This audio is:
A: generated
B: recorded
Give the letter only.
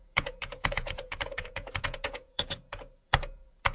A